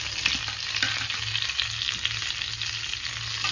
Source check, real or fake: real